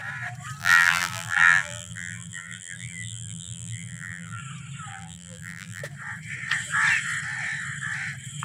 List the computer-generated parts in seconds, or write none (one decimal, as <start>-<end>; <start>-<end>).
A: 0.6-4.4; 4.9-5.8